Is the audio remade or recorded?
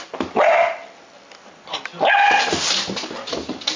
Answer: recorded